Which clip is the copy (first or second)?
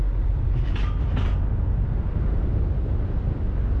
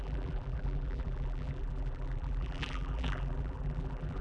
second